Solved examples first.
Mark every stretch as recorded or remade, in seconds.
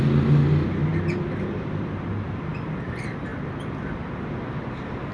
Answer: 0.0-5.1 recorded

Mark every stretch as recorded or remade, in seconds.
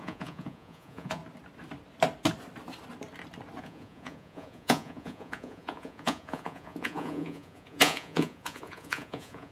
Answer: 0.0-1.2 remade; 1.2-3.6 recorded; 3.6-9.5 remade